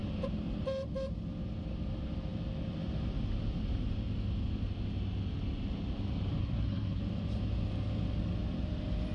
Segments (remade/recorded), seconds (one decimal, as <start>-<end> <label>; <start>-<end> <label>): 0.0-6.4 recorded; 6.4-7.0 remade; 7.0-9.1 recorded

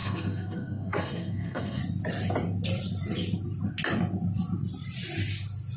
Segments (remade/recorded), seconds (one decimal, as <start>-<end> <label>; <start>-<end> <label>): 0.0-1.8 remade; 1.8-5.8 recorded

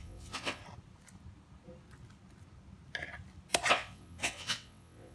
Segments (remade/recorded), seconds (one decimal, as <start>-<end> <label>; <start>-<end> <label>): 0.0-0.6 remade; 0.6-3.7 recorded; 3.7-5.1 remade

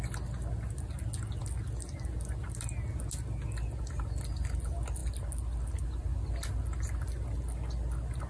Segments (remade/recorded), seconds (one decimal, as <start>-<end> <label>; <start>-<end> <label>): 0.0-8.3 recorded

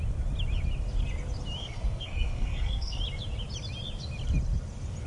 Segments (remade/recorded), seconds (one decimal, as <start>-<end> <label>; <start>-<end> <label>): 0.0-1.6 recorded; 1.6-3.0 remade; 3.0-5.1 recorded

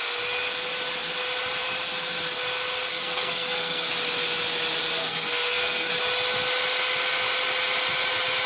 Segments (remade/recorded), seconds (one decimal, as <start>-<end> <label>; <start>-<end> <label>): 0.0-2.9 recorded; 2.9-3.9 remade; 3.9-5.0 recorded; 5.0-5.9 remade; 5.9-8.5 recorded

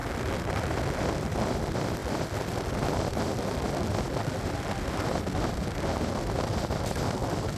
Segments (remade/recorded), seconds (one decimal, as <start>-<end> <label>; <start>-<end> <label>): 0.0-7.6 recorded

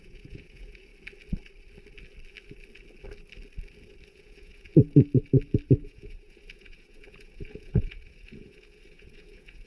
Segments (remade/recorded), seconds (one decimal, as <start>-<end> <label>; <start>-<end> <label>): 0.0-0.9 remade; 0.9-4.1 recorded; 4.1-4.7 remade; 4.7-5.7 recorded; 5.7-9.7 remade